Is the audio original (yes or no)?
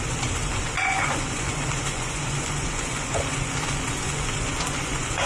no